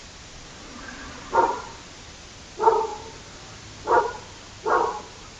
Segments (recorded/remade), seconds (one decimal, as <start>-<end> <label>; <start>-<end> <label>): 0.0-5.4 recorded